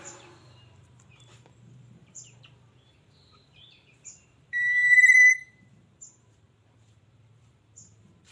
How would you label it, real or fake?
fake